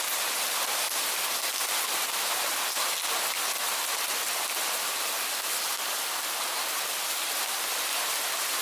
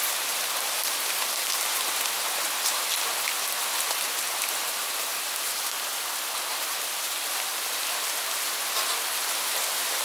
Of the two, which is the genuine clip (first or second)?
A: first